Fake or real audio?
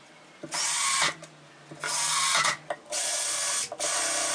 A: real